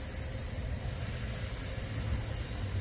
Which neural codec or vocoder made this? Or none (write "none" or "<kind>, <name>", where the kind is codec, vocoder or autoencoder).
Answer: none